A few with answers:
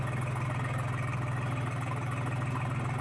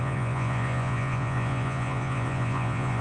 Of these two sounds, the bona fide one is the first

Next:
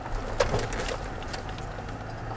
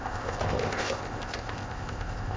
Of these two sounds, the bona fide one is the first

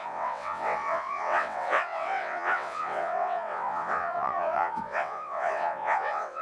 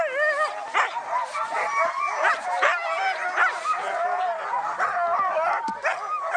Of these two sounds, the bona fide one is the second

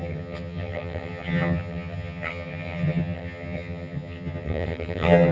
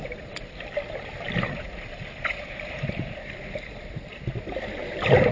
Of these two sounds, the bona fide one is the second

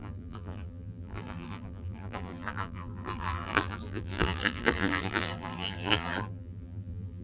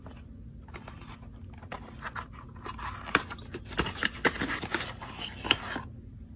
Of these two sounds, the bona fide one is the second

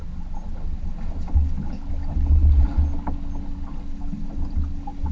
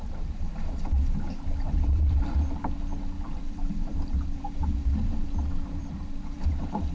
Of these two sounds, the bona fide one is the first